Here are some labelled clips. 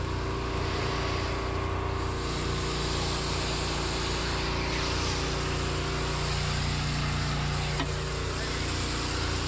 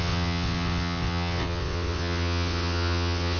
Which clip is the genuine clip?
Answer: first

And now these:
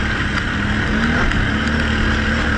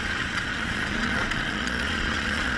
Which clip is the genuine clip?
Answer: first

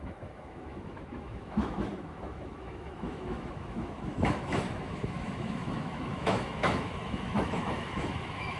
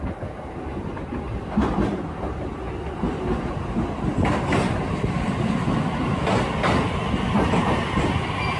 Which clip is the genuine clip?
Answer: second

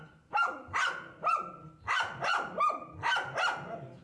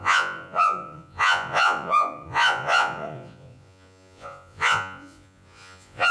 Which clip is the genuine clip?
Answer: first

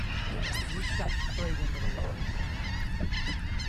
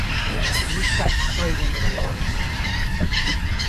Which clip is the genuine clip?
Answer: first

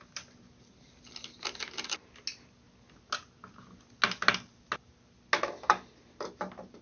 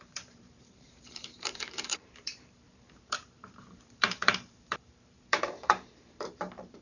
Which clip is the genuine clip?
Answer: first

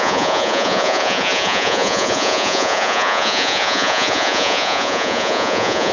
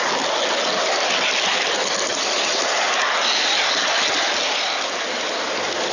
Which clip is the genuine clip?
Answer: second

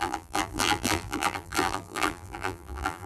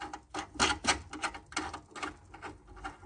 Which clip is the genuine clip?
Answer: second